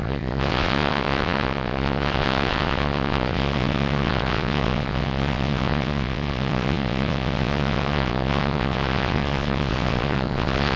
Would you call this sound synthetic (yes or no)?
yes